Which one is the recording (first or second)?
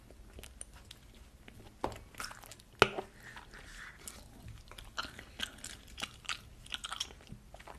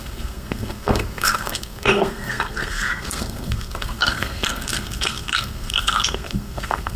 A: first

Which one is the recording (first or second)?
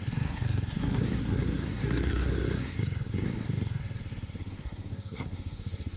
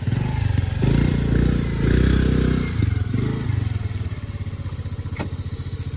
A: second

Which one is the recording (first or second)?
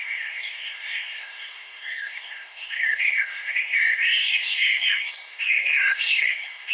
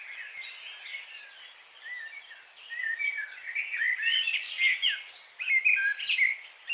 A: second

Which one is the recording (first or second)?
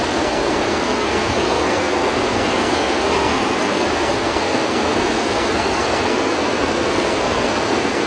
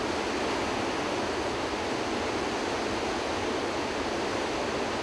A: second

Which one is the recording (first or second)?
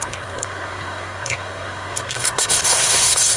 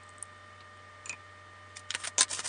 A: second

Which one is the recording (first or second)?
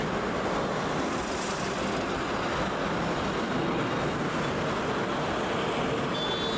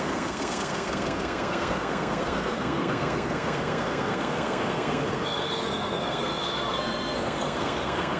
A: first